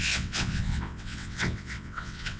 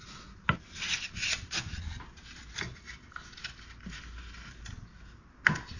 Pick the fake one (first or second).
first